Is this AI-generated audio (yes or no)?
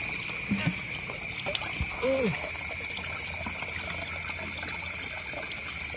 no